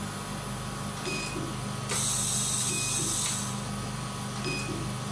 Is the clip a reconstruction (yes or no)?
no